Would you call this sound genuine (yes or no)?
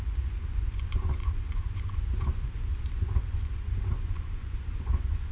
no